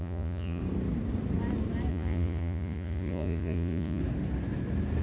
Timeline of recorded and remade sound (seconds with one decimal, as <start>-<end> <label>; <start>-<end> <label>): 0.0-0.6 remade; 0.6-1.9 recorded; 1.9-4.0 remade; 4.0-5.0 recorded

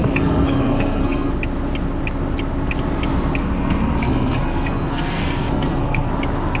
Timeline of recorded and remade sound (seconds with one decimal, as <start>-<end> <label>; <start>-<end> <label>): 0.0-1.3 remade; 1.3-3.4 recorded; 3.4-6.1 remade; 6.1-6.6 recorded

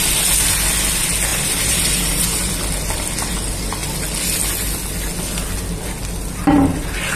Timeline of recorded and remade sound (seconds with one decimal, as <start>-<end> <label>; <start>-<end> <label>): 0.0-1.3 recorded; 1.3-2.5 remade; 2.5-7.2 recorded

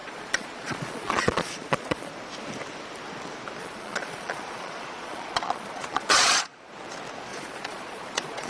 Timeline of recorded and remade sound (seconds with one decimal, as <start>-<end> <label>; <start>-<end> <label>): 0.0-2.1 remade; 2.1-3.6 recorded; 3.6-6.7 remade; 6.7-7.3 recorded; 7.3-8.5 remade

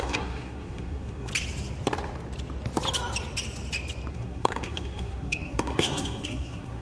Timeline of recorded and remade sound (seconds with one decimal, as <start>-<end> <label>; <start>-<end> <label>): 0.0-1.3 remade; 1.3-4.1 recorded; 4.1-6.8 remade